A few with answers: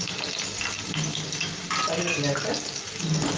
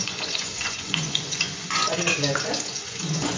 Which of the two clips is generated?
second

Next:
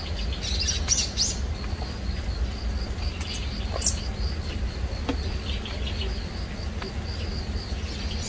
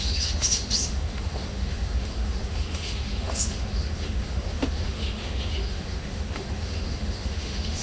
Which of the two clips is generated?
second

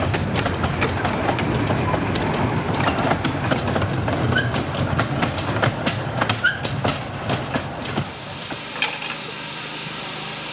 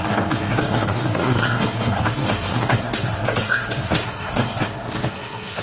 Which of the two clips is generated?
second